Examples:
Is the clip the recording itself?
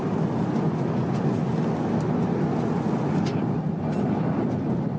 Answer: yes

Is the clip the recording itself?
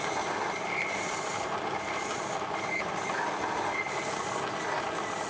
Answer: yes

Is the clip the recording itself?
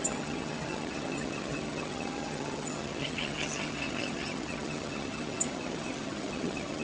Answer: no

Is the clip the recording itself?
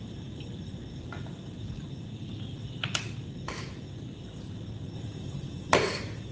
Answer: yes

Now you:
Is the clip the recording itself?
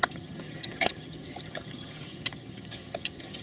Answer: no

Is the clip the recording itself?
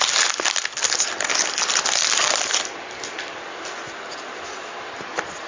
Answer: yes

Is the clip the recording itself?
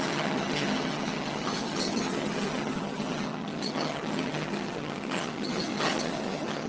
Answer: no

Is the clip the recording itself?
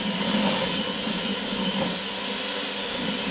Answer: yes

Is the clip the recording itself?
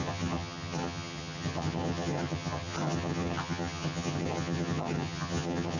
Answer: no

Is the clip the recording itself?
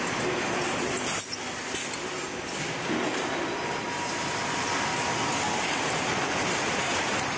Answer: yes